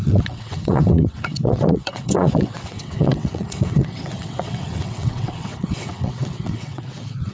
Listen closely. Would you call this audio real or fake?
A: fake